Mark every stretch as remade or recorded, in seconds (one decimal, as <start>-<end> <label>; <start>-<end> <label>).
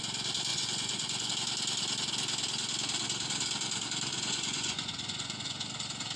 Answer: 0.0-0.5 recorded; 0.5-1.3 remade; 1.3-4.1 recorded; 4.1-5.7 remade; 5.7-6.2 recorded